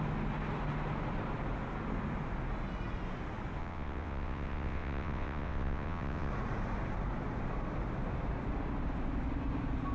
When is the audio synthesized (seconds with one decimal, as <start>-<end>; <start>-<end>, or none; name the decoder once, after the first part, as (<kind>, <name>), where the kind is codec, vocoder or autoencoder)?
3.6-6.3 (vocoder, WaveNeXt)